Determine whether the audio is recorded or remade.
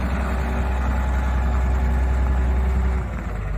recorded